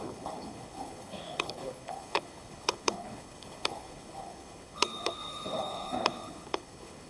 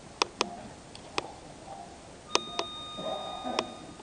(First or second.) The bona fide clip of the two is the second